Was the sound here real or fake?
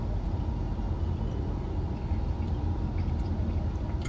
real